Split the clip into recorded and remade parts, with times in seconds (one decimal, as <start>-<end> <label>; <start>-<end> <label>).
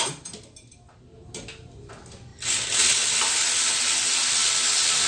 0.0-5.1 recorded